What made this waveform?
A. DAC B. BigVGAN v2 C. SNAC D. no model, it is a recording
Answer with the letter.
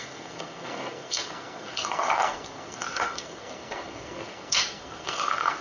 C